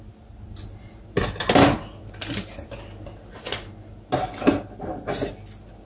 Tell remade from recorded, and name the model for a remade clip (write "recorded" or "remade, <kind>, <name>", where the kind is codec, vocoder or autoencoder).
recorded